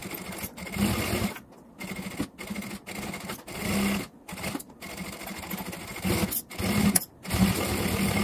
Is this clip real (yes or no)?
yes